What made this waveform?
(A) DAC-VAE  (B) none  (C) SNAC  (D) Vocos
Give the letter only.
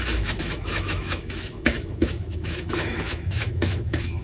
A